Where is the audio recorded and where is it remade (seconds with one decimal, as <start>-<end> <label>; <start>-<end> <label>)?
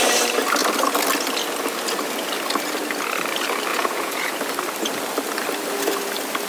0.0-3.7 recorded; 3.7-4.3 remade; 4.3-6.5 recorded